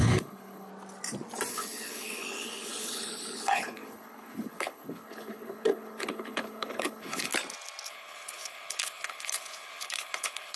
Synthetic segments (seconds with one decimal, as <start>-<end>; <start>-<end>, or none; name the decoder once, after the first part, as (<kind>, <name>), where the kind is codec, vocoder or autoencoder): 0.0-0.7 (codec, HILCodec); 1.5-7.3; 7.9-10.6